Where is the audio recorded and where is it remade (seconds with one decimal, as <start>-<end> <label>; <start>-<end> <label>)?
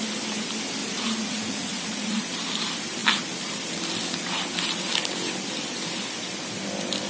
0.0-0.8 recorded; 0.8-2.2 remade; 2.2-7.1 recorded